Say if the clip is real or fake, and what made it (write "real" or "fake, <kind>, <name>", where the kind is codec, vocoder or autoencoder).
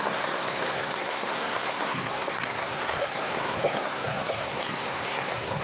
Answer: fake, codec, SNAC